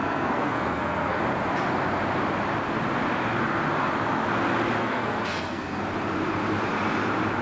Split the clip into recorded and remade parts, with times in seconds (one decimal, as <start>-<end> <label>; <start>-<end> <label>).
0.0-1.2 remade; 1.2-4.8 recorded; 4.8-5.8 remade; 5.8-7.4 recorded